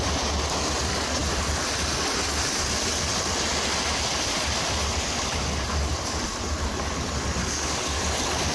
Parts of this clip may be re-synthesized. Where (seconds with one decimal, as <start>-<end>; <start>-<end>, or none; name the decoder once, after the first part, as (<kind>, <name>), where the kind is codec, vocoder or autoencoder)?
7.4-8.0 (codec, DAC)